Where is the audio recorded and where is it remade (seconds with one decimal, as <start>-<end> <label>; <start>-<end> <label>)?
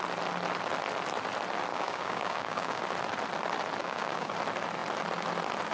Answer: 0.0-1.7 recorded; 1.7-2.8 remade; 2.8-3.8 recorded; 3.8-4.3 remade; 4.3-5.7 recorded